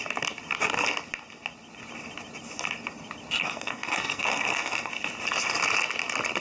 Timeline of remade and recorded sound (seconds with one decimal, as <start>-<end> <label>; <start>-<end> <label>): 0.0-3.4 recorded; 3.4-4.9 remade; 4.9-6.4 recorded